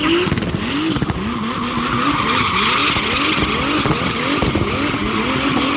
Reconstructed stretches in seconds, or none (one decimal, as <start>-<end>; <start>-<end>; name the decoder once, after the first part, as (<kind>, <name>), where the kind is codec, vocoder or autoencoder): none